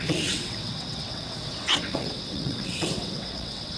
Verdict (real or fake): fake